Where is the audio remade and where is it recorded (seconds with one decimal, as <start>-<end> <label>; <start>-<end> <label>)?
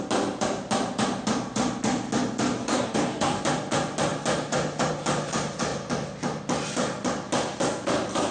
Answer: 0.0-2.6 recorded; 2.6-3.4 remade; 3.4-8.3 recorded